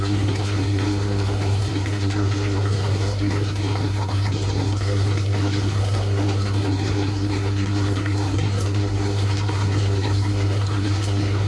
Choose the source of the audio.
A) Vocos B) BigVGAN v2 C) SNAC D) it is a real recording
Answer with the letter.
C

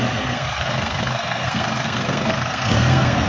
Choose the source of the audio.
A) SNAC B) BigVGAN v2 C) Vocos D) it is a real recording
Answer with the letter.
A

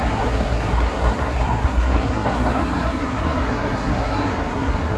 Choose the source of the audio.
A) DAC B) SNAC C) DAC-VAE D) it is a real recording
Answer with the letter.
B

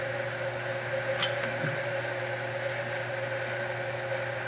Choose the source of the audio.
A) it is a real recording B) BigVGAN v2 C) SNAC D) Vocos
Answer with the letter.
A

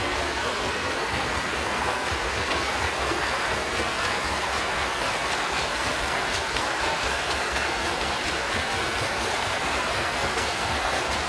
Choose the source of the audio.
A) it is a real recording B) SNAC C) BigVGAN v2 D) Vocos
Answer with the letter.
B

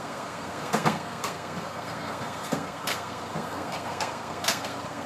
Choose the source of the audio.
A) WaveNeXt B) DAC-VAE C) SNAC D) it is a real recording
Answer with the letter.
C